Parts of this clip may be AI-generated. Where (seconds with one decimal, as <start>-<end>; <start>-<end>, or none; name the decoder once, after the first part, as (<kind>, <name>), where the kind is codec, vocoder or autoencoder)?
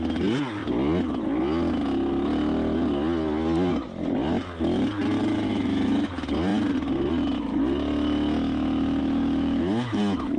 5.5-6.1 (autoencoder, DAC-VAE); 9.0-10.0